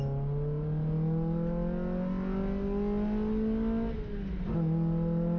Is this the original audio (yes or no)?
yes